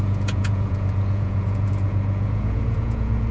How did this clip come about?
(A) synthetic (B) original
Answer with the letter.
A